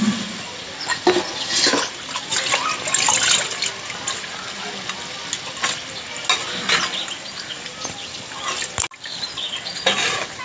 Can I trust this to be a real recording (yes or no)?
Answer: yes